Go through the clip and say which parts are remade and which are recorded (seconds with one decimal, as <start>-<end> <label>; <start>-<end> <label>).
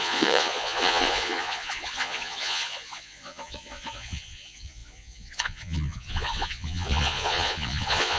0.0-8.2 remade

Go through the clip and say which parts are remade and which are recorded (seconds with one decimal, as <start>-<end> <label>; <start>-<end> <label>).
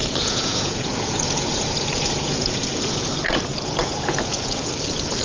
0.0-3.1 remade; 3.1-3.5 recorded; 3.5-5.2 remade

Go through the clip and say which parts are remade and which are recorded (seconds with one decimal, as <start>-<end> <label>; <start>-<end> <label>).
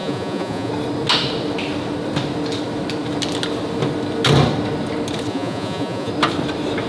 0.0-0.7 remade; 0.7-5.3 recorded; 5.3-6.1 remade; 6.1-6.9 recorded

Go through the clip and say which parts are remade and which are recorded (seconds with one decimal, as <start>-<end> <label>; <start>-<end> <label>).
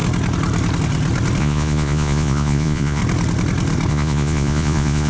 0.0-1.4 recorded; 1.4-3.0 remade; 3.0-3.9 recorded; 3.9-5.1 remade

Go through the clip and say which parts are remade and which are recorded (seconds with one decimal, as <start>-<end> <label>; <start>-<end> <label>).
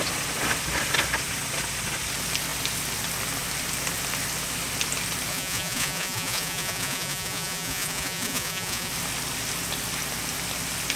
0.0-5.3 recorded; 5.3-8.9 remade; 8.9-11.0 recorded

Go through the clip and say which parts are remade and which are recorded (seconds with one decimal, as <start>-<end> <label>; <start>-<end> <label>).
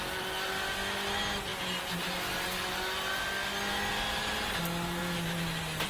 0.0-5.9 recorded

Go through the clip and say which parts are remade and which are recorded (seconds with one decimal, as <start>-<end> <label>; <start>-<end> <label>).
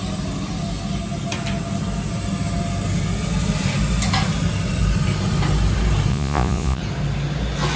0.0-6.1 recorded; 6.1-6.8 remade; 6.8-7.8 recorded